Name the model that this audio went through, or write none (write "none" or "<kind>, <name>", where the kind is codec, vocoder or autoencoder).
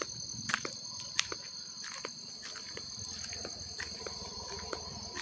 none